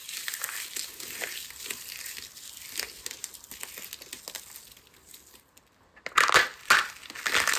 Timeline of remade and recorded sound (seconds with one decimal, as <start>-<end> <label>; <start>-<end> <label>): 0.0-7.6 recorded